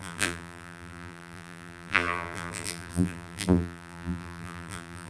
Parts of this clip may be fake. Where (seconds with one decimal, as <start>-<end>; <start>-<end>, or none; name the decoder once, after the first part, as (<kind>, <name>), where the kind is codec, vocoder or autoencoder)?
0.0-5.1 (vocoder, BigVGAN v2)